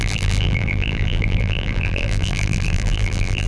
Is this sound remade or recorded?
remade